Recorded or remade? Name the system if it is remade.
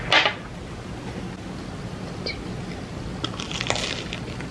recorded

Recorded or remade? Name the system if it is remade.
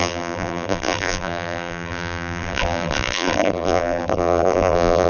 remade, vocoder, BigVGAN v2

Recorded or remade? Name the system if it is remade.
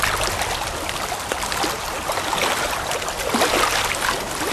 recorded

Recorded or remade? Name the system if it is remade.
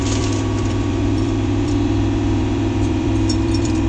remade, vocoder, BigVGAN v2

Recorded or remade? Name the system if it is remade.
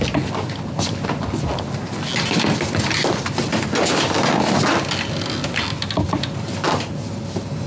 recorded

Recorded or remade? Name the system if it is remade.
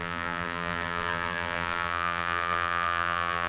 remade, vocoder, BigVGAN v2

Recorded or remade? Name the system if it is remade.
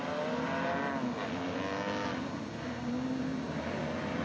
remade, vocoder, BigVGAN v2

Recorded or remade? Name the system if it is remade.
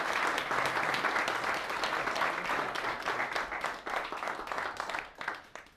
recorded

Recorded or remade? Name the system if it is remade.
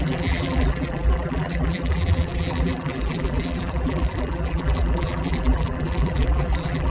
remade, vocoder, BigVGAN v2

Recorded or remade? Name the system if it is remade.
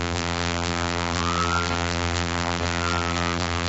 remade, vocoder, BigVGAN v2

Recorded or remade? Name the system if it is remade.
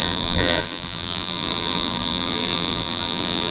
remade, vocoder, BigVGAN v2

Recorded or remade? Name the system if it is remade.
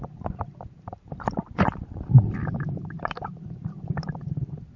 remade, vocoder, BigVGAN v2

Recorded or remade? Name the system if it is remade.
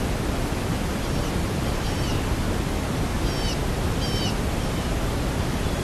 recorded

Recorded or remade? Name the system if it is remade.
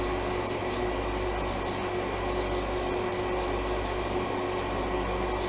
recorded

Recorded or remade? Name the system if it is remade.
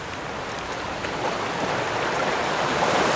recorded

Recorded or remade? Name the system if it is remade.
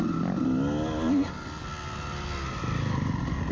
recorded